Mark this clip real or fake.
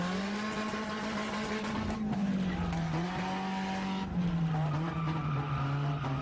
real